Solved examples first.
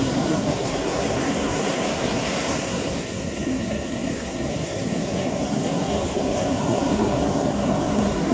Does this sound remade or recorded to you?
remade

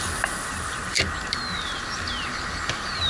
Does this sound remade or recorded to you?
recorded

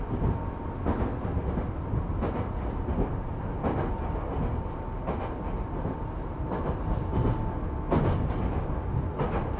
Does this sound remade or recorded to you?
recorded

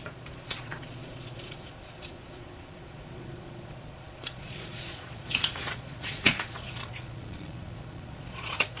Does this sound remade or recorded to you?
remade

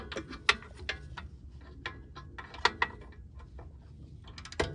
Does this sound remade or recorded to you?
recorded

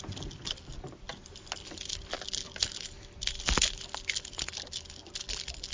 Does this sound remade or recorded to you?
recorded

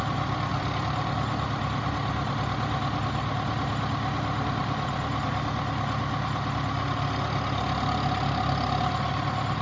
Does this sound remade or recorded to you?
recorded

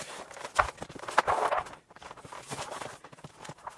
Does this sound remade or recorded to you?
remade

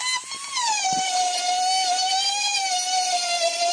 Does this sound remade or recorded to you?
recorded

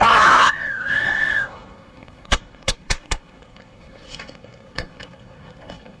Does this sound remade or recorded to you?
remade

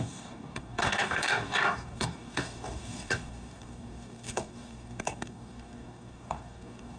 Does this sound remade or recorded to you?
remade